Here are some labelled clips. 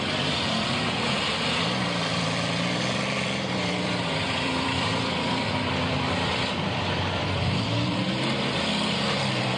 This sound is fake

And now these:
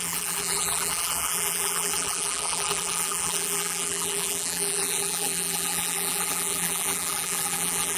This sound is fake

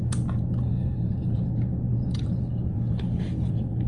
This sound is fake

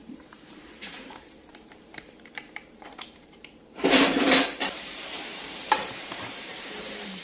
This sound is fake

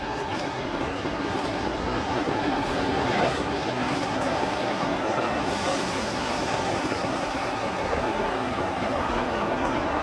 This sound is fake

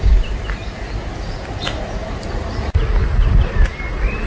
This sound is real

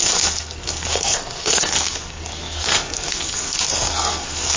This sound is fake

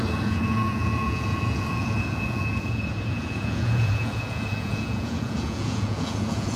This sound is fake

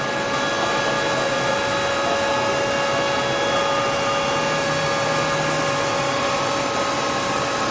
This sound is real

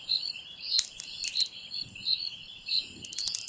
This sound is fake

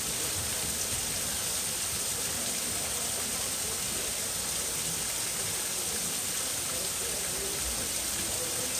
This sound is real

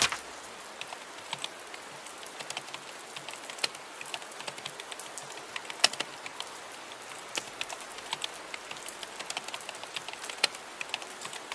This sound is real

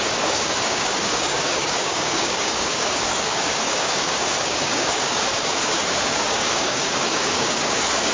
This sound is fake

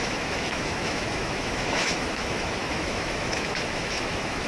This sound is fake